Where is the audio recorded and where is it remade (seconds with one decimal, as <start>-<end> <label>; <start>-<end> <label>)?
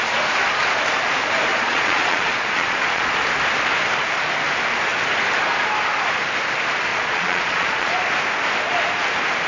0.0-1.5 recorded; 1.5-3.1 remade; 3.1-6.9 recorded; 6.9-7.9 remade; 7.9-9.5 recorded